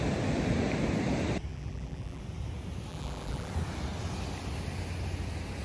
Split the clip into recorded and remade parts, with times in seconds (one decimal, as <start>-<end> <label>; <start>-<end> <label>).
0.0-1.5 recorded; 1.5-2.2 remade; 2.2-2.9 recorded; 2.9-3.5 remade; 3.5-5.6 recorded